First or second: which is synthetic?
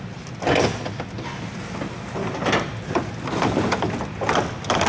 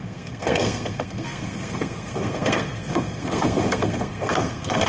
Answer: second